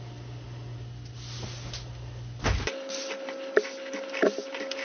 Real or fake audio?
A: real